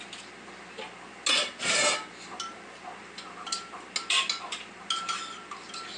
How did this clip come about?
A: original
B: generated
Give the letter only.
A